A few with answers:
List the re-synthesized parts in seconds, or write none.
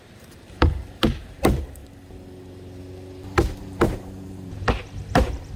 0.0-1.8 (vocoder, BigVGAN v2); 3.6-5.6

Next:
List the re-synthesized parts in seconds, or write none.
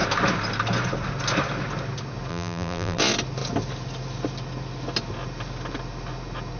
2.3-3.0 (vocoder, BigVGAN v2)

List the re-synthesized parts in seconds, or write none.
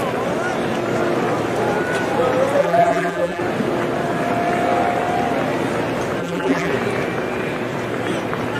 2.6-3.4 (vocoder, BigVGAN v2); 6.2-6.7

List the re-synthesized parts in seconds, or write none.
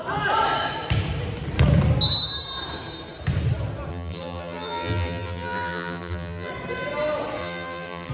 3.9-6.5 (vocoder, BigVGAN v2); 7.4-8.1